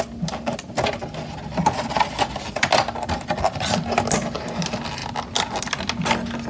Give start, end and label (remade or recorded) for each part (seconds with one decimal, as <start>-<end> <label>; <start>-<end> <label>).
0.0-6.5 recorded